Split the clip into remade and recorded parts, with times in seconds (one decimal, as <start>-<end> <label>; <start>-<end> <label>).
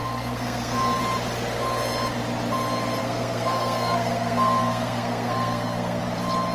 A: 0.0-1.0 remade; 1.0-3.0 recorded; 3.0-6.0 remade; 6.0-6.5 recorded